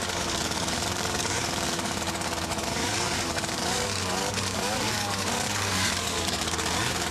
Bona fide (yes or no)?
no